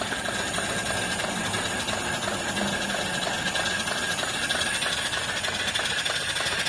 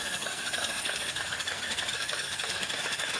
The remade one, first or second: second